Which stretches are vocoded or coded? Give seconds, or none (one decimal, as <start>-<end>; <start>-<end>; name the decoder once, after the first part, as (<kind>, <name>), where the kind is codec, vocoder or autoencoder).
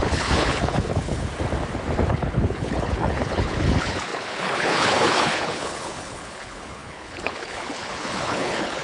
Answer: 0.0-1.3 (codec, HILCodec); 2.1-8.8